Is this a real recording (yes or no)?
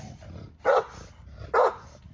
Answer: yes